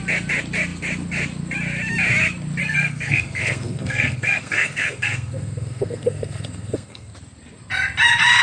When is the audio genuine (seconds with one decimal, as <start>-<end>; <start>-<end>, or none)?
0.0-2.6; 7.1-8.4